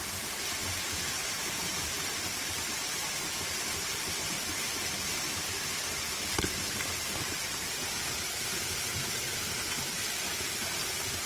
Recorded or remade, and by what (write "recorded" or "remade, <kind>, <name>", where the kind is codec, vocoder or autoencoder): remade, vocoder, BigVGAN v2